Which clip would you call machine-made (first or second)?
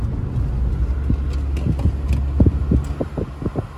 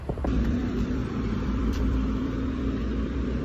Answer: second